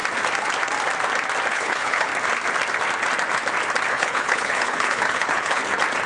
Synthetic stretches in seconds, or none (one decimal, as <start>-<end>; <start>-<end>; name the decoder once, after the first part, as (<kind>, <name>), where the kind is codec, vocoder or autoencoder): 1.5-2.1 (codec, HILCodec); 3.9-5.6